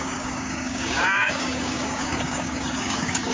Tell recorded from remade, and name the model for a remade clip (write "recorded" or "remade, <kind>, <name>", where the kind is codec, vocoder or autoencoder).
remade, codec, DAC